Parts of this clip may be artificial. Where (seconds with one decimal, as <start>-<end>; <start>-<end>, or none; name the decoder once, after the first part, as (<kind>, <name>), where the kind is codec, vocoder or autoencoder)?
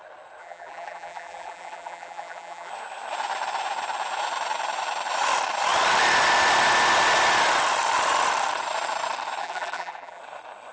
0.4-2.7 (vocoder, BigVGAN v2); 9.4-10.2